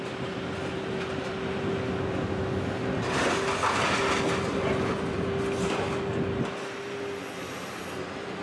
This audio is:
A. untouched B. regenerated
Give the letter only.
A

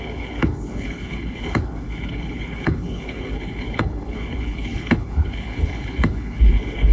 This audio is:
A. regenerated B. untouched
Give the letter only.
A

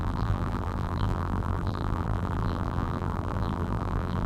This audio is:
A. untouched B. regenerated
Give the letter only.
B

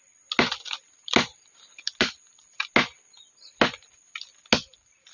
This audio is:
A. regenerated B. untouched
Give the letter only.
B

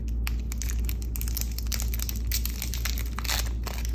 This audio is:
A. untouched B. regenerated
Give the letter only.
A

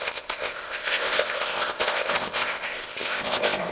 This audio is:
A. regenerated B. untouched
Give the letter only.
A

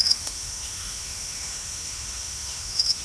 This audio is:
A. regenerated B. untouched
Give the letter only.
A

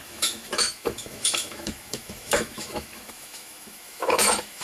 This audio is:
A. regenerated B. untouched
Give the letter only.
A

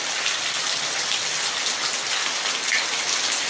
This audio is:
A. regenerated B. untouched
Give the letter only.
B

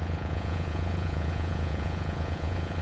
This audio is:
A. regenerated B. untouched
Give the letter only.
A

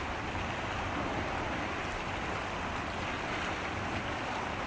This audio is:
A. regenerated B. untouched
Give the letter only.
B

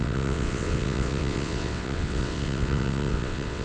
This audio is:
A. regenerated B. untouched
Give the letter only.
A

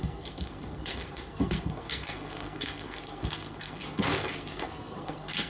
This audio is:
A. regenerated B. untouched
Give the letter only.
A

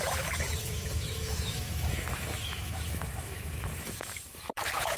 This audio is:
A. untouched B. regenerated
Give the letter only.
B